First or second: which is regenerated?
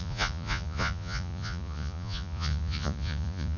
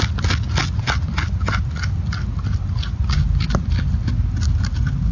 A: first